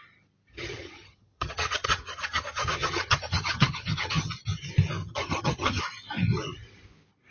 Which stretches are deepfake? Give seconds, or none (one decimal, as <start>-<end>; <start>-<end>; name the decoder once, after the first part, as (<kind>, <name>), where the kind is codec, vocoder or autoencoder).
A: 0.5-4.3 (vocoder, HiFi-GAN); 5.0-5.8